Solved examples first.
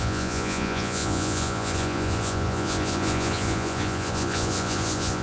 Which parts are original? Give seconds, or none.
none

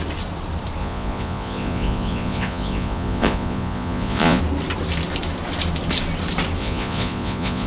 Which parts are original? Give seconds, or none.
0.0-0.8; 4.4-6.6

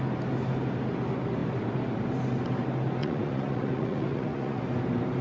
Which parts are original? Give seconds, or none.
0.0-3.0; 4.6-5.2

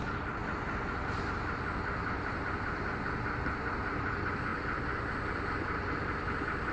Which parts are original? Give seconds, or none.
0.0-6.7

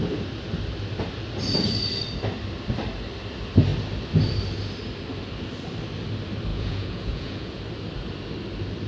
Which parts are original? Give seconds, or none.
0.0-6.5; 7.6-8.9

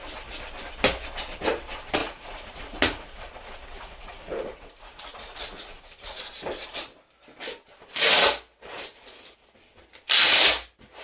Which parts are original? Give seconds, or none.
0.0-2.0; 6.2-11.0

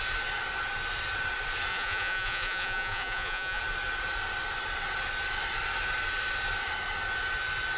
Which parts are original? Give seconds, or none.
0.0-1.7; 3.6-7.8